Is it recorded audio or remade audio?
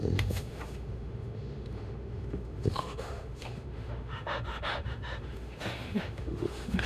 remade